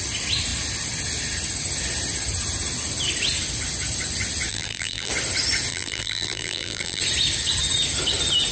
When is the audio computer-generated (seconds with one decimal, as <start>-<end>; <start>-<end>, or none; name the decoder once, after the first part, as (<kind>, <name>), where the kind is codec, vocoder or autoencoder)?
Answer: 4.5-5.1 (vocoder, BigVGAN v2); 5.7-7.0